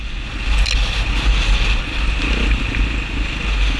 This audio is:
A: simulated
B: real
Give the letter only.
B